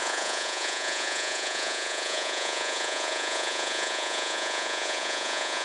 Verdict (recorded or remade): remade